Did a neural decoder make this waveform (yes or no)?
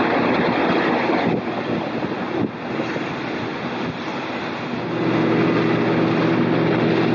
no